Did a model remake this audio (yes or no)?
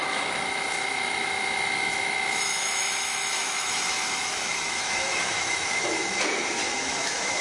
yes